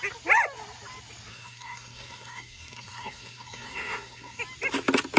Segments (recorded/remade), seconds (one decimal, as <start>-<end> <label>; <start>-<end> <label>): 0.0-1.3 recorded; 1.3-4.4 remade; 4.4-5.2 recorded